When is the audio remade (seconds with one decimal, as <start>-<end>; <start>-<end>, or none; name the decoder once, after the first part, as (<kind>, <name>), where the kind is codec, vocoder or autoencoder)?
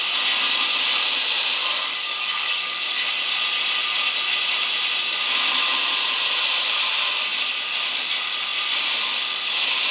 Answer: 1.6-3.1 (codec, DAC)